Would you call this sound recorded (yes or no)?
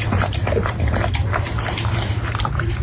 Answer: yes